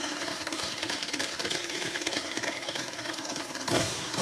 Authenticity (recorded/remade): remade